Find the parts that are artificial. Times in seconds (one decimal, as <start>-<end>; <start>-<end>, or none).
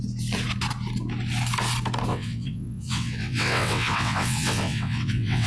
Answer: 2.1-5.5